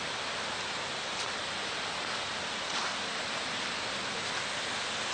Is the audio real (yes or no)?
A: yes